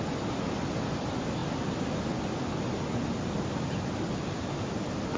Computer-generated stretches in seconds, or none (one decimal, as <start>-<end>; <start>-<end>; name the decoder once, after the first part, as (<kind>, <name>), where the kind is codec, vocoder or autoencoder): none